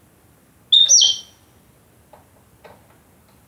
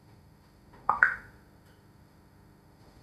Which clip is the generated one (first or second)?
second